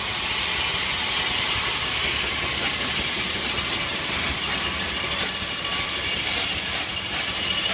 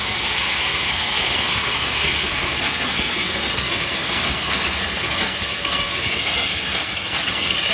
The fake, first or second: second